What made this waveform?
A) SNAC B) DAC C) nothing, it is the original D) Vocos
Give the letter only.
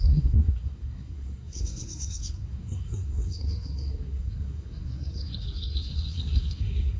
A